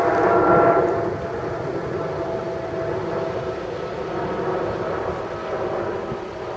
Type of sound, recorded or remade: recorded